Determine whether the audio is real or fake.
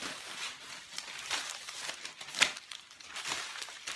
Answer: real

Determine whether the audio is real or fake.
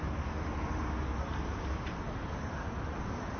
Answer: real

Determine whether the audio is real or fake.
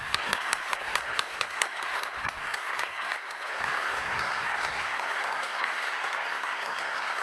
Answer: fake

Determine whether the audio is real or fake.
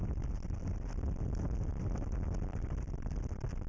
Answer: real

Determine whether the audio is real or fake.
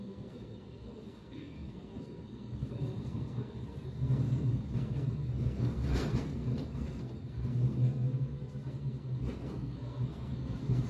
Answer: fake